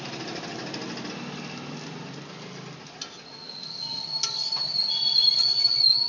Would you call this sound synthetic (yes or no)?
no